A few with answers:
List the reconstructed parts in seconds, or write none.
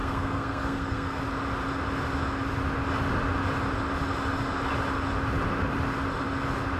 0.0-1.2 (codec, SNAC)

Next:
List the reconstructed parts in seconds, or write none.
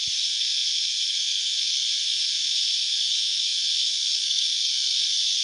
0.0-5.4 (codec, SNAC)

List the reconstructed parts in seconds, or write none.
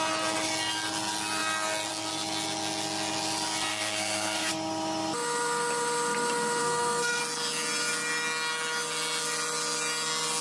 3.7-4.5 (codec, SNAC); 6.6-7.2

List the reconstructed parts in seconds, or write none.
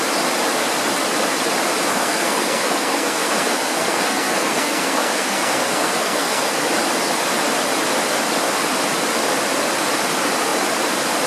1.9-6.6 (codec, SNAC)